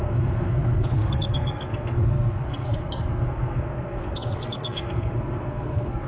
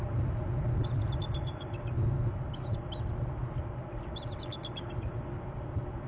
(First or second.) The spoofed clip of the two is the first